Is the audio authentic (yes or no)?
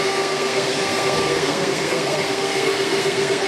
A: no